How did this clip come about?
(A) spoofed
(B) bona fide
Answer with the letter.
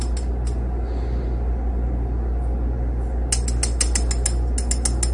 B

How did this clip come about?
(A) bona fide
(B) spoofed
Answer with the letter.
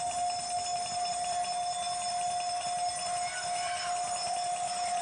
A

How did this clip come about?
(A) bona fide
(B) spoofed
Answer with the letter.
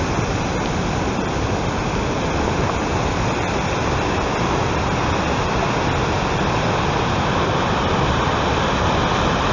A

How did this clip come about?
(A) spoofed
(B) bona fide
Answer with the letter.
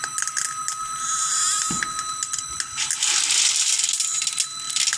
B